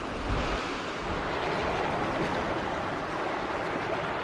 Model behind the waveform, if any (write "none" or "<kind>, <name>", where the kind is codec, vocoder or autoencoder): none